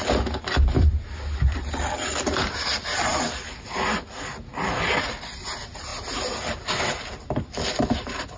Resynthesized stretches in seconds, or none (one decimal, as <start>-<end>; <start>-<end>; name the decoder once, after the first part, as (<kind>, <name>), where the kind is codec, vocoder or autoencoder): none

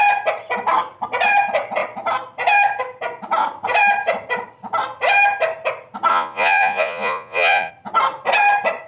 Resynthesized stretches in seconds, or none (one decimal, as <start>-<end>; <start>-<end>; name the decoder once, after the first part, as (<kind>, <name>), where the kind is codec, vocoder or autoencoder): 6.1-7.7 (vocoder, Vocos)